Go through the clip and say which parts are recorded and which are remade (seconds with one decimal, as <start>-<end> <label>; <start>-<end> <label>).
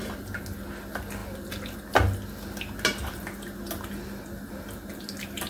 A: 0.0-5.5 recorded